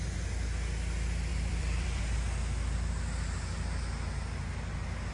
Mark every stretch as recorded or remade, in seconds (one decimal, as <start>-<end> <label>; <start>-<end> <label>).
0.0-1.3 recorded; 1.3-2.0 remade; 2.0-5.1 recorded